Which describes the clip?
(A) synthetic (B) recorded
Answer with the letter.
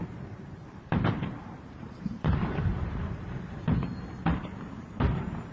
A